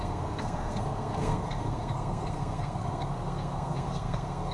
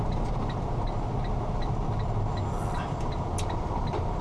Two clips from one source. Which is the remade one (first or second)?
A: first